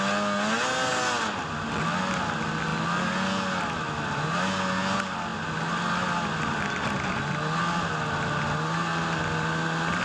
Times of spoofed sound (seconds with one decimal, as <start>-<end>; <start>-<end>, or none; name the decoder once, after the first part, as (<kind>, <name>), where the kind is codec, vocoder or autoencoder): none

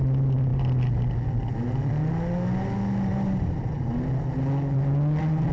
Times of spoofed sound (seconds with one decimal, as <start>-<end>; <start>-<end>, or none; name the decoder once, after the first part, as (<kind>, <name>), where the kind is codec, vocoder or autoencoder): 3.1-3.7 (vocoder, BigVGAN v2)